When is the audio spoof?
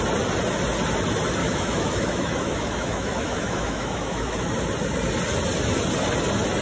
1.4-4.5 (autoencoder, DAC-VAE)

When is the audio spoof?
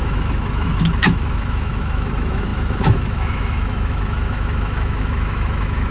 0.0-5.9 (autoencoder, DAC-VAE)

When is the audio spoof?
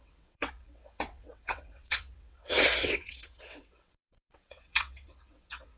0.0-5.8 (vocoder, WaveNeXt)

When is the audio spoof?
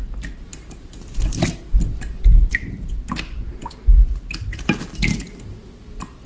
none